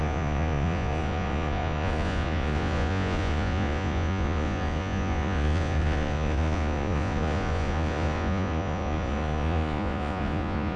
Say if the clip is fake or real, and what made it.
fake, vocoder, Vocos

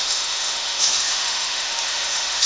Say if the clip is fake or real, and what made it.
fake, autoencoder, DAC-VAE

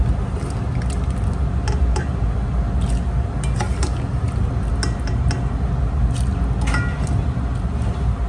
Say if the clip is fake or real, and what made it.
real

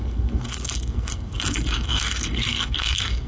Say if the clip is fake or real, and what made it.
fake, codec, SNAC